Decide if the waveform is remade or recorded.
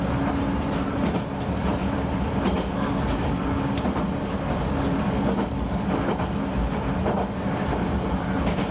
recorded